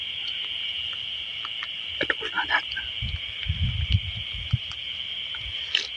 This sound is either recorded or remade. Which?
recorded